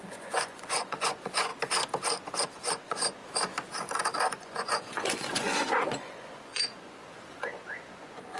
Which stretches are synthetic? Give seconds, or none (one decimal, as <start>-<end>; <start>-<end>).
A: 0.0-1.5; 2.5-3.2; 4.2-8.4